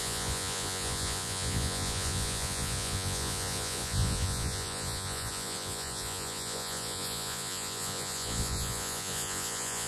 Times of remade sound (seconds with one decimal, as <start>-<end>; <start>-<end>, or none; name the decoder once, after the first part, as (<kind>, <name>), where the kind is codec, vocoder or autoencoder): 0.0-9.9 (vocoder, Vocos)